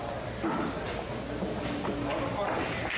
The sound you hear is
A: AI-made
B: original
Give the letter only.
B